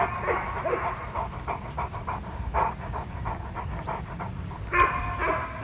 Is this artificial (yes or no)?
no